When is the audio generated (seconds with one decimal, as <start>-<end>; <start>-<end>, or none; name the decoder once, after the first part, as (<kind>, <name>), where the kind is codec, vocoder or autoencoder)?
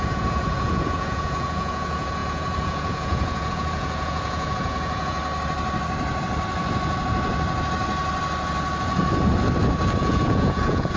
0.0-5.2 (vocoder, Vocos); 10.0-11.0